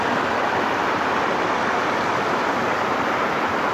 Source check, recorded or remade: recorded